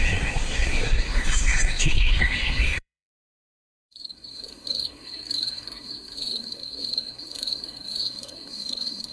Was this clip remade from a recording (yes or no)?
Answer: yes